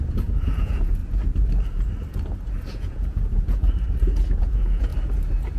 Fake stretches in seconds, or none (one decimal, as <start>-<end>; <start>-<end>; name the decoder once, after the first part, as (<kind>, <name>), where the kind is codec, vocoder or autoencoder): 0.0-1.0 (vocoder, Vocos); 2.7-3.6; 4.4-4.9